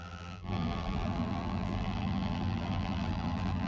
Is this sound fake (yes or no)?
yes